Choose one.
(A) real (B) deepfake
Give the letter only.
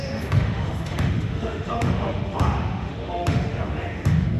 B